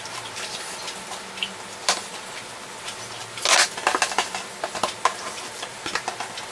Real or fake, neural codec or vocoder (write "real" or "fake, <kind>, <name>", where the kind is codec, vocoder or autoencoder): real